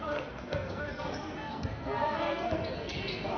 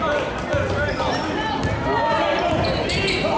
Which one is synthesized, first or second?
first